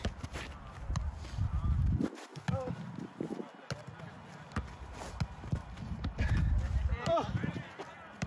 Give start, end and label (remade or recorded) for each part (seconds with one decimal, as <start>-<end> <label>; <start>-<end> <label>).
0.0-2.3 remade; 2.3-5.3 recorded; 5.3-8.3 remade